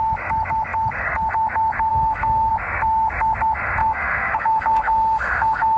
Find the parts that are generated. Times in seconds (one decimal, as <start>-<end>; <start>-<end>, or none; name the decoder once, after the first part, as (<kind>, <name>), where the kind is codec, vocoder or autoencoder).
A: 1.9-2.5 (autoencoder, DAC-VAE); 3.8-5.8